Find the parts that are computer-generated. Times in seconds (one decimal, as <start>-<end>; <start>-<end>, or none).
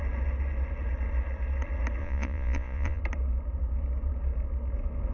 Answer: 2.0-3.0